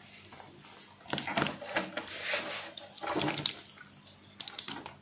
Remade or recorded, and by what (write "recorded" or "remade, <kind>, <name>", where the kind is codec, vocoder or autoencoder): recorded